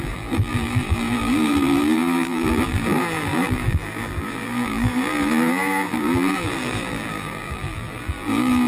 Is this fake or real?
fake